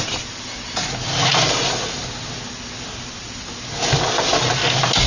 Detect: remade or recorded recorded